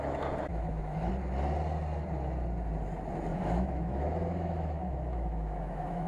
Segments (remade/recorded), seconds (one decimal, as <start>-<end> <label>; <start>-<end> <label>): 0.0-0.5 recorded; 0.5-1.1 remade; 1.1-3.3 recorded; 3.3-6.1 remade